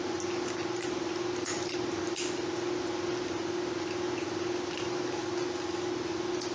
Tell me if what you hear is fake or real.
real